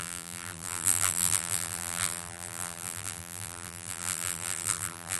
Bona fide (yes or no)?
no